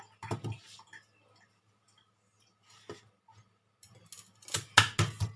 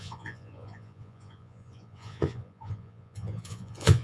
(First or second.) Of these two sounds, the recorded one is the first